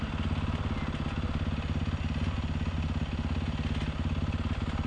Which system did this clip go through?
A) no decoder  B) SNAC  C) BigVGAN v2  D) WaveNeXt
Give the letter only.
A